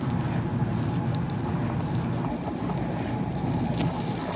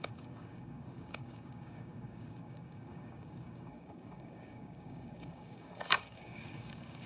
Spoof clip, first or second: second